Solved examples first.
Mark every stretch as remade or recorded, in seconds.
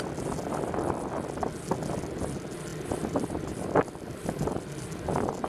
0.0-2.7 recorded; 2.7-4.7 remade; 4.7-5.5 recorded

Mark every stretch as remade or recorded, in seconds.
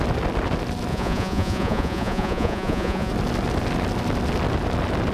0.0-0.9 recorded; 0.9-3.1 remade; 3.1-5.1 recorded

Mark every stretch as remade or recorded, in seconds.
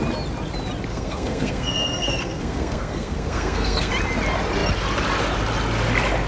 0.0-0.9 recorded; 0.9-3.9 remade; 3.9-6.3 recorded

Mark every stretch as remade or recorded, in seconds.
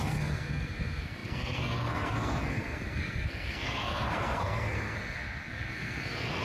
0.0-6.4 remade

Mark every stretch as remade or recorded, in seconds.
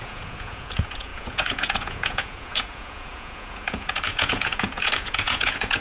0.0-5.8 remade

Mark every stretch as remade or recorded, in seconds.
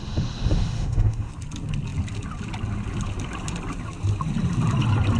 0.0-1.3 remade; 1.3-5.2 recorded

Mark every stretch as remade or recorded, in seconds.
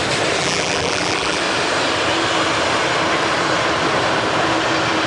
0.0-0.4 recorded; 0.4-1.4 remade; 1.4-5.1 recorded